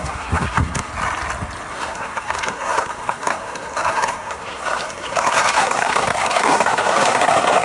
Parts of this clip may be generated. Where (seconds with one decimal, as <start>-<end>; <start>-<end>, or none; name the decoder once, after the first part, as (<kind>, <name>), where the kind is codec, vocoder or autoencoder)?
0.0-0.9 (codec, SNAC); 1.7-7.6